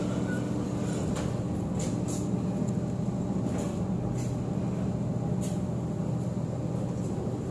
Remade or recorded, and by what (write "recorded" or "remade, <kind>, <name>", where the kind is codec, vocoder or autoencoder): recorded